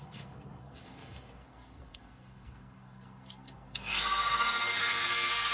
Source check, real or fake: fake